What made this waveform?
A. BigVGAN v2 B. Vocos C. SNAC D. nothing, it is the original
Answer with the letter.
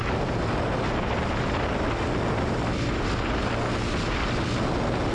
D